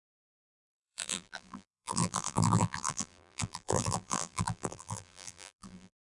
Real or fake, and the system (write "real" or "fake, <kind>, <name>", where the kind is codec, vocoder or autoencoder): fake, vocoder, BigVGAN v2